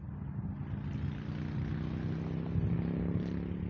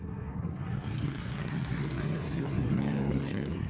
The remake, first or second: second